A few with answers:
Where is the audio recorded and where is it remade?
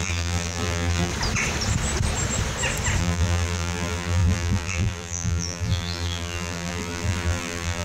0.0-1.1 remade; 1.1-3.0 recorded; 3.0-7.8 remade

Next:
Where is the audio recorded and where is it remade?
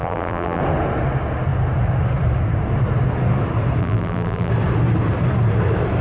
0.0-0.6 remade; 0.6-3.8 recorded; 3.8-4.5 remade; 4.5-6.0 recorded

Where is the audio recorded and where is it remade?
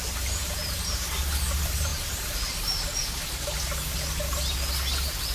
0.0-0.4 recorded; 0.4-1.1 remade; 1.1-1.9 recorded; 1.9-2.5 remade; 2.5-5.3 recorded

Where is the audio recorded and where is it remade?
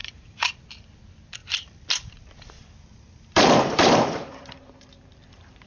0.0-0.6 remade; 0.6-2.6 recorded; 2.6-5.7 remade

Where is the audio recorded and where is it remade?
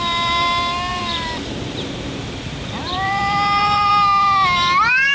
0.0-0.9 recorded; 0.9-3.9 remade; 3.9-5.1 recorded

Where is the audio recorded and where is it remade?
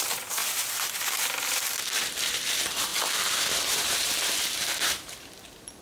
0.0-0.4 remade; 0.4-2.1 recorded; 2.1-2.9 remade; 2.9-3.7 recorded; 3.7-5.8 remade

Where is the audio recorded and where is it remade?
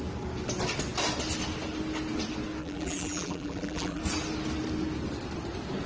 0.0-2.6 recorded; 2.6-4.0 remade; 4.0-5.9 recorded